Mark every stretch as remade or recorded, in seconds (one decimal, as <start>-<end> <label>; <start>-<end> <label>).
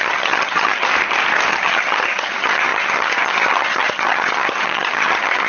0.0-0.9 remade; 0.9-1.5 recorded; 1.5-5.5 remade